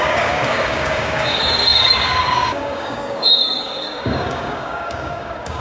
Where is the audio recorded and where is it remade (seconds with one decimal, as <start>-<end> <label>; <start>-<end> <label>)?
0.0-5.6 remade